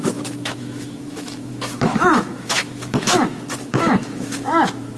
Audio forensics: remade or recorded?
remade